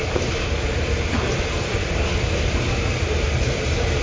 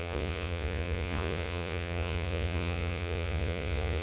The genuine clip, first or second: first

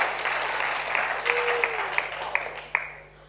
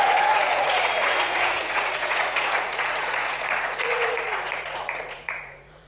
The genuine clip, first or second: first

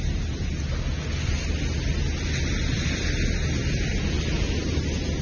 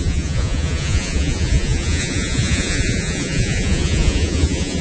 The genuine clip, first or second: first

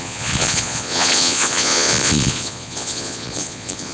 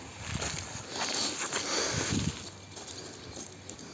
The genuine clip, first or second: second